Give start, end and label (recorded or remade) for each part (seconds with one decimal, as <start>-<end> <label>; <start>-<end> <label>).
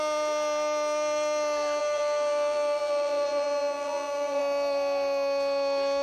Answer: 0.0-1.8 recorded; 1.8-4.4 remade; 4.4-6.0 recorded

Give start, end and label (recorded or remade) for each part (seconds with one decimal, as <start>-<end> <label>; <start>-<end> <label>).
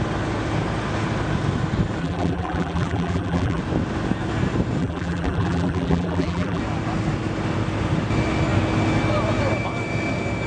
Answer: 0.0-2.0 recorded; 2.0-3.6 remade; 3.6-4.8 recorded; 4.8-6.6 remade; 6.6-10.5 recorded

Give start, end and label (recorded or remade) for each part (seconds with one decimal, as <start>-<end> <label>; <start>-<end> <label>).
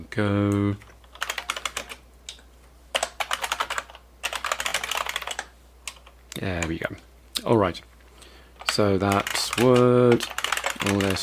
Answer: 0.0-9.3 recorded; 9.3-10.5 remade; 10.5-11.2 recorded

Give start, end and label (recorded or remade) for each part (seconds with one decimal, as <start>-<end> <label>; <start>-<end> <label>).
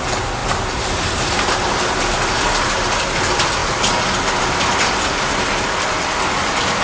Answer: 0.0-0.4 recorded; 0.4-3.0 remade; 3.0-6.8 recorded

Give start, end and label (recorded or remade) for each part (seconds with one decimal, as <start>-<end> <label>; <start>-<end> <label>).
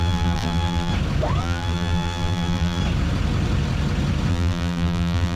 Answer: 0.0-0.9 remade; 0.9-1.4 recorded; 1.4-2.8 remade; 2.8-4.3 recorded; 4.3-5.4 remade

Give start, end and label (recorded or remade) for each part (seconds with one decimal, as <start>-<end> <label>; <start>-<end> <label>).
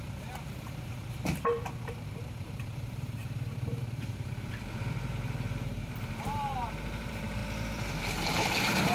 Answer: 0.0-7.4 remade; 7.4-8.0 recorded; 8.0-8.9 remade